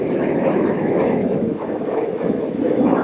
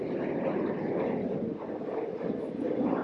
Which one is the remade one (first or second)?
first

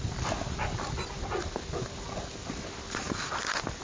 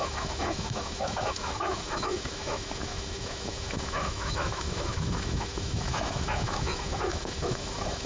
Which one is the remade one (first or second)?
second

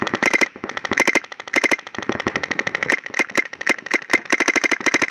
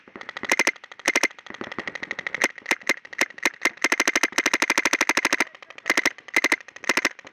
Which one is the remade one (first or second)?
first